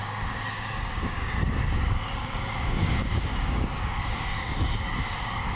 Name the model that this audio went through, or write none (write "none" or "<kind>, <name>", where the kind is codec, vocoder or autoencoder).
codec, DAC